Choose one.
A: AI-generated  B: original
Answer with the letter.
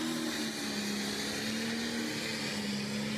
B